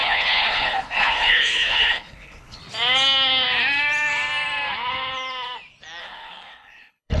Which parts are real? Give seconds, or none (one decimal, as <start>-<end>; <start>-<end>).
2.6-6.0